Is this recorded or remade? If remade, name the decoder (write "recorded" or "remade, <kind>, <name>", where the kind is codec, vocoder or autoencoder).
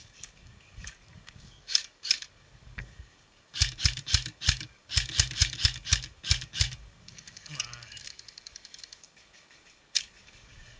remade, codec, DAC